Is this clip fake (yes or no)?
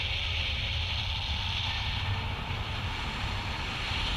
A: no